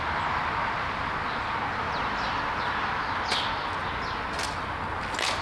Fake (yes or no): no